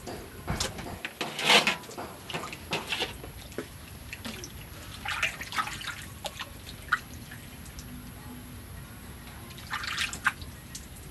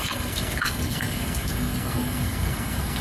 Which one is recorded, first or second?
first